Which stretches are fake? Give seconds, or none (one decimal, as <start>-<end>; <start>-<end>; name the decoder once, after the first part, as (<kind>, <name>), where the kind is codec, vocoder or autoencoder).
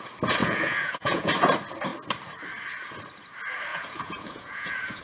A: 0.4-1.3 (vocoder, Vocos); 3.7-5.0